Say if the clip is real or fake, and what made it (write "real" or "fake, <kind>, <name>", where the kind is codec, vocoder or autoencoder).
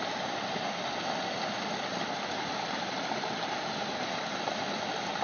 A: real